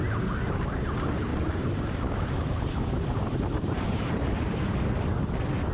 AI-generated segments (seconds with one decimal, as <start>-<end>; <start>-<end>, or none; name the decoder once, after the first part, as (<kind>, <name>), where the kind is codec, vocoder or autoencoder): 1.3-4.7 (vocoder, BigVGAN v2)